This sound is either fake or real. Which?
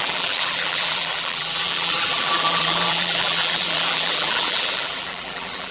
fake